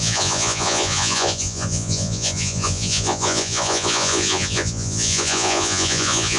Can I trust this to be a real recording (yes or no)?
no